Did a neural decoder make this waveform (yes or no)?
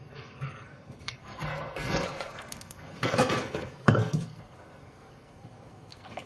yes